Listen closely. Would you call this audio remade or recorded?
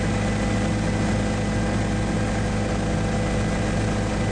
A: recorded